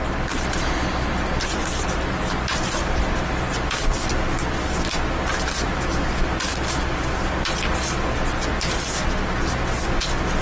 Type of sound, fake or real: real